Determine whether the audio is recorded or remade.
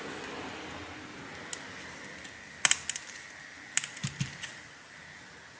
recorded